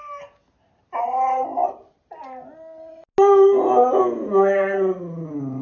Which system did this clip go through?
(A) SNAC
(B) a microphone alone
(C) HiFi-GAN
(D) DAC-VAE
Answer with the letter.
B